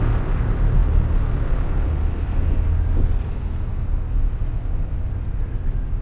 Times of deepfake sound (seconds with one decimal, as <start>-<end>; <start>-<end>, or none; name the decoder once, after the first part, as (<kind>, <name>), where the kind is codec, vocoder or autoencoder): none